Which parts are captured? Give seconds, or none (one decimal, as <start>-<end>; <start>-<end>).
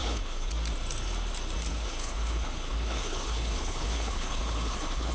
0.5-1.7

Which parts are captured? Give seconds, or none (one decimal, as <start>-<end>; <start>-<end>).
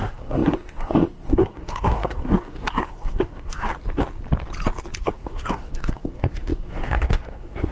3.7-5.0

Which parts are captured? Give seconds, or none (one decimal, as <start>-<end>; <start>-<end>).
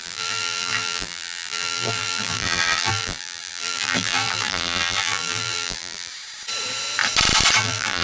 6.1-7.6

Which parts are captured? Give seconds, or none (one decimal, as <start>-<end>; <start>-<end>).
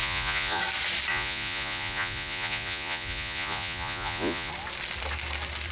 0.6-1.1; 4.5-5.7